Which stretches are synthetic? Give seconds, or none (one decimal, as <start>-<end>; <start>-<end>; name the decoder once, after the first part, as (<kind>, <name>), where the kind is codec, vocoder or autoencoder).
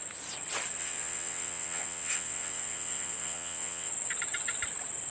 0.8-3.9 (vocoder, WaveNeXt)